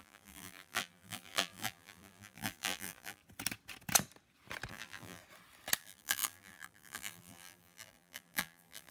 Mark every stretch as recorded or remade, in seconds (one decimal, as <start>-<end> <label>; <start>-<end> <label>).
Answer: 0.0-3.2 remade; 3.2-4.7 recorded; 4.7-5.2 remade; 5.2-5.8 recorded; 5.8-8.9 remade